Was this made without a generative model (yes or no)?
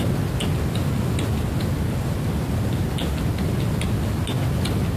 yes